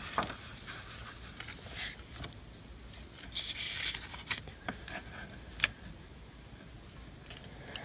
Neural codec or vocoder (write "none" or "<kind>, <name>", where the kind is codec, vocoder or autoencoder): none